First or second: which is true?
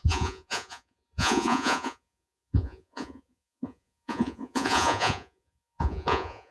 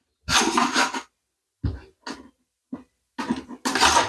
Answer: second